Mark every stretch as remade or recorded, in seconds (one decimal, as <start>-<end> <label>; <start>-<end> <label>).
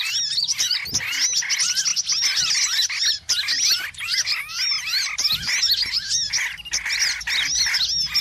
0.0-8.2 recorded